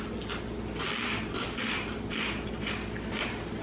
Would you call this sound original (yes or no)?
yes